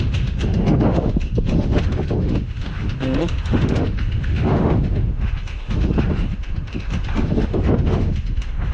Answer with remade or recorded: remade